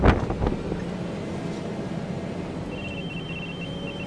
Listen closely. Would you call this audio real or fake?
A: real